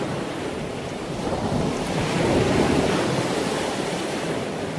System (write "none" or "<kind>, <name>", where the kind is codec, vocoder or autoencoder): vocoder, BigVGAN v2